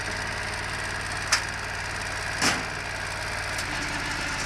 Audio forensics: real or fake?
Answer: real